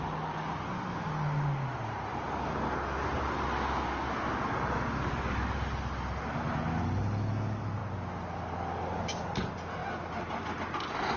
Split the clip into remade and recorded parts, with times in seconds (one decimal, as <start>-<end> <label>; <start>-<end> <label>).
0.0-11.2 recorded